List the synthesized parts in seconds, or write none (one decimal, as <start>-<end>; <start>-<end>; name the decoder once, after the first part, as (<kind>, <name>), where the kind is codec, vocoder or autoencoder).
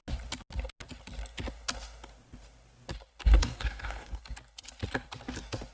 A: 3.4-4.2 (codec, SNAC)